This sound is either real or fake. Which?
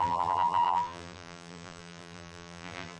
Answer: fake